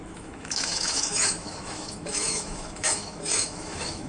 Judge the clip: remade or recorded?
remade